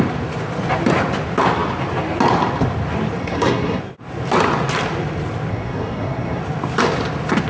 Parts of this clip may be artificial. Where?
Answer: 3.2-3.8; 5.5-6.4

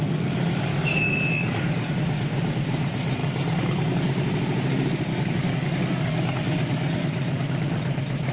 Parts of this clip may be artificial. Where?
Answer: 0.7-1.9; 3.2-4.1; 5.1-7.5

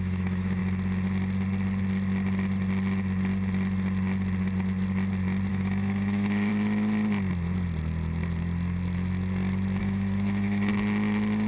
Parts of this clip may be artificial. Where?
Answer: 0.0-0.6; 5.5-6.5; 9.8-10.7

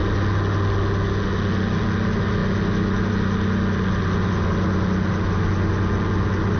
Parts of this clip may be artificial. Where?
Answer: none

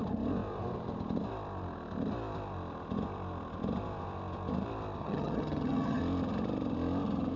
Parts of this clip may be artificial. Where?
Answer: 5.0-6.0

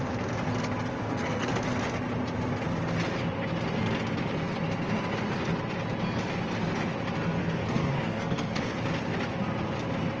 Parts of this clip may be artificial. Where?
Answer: 1.0-1.5; 7.4-8.8

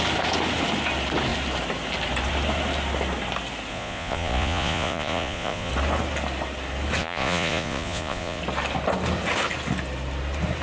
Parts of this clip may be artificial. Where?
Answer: 3.7-5.7; 7.0-8.4